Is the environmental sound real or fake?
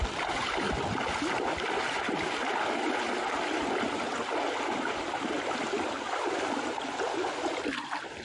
real